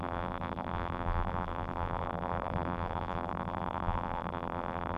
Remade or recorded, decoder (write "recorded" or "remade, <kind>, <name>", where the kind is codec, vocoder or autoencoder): remade, vocoder, BigVGAN v2